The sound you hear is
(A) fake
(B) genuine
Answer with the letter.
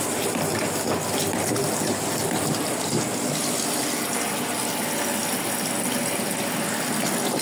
B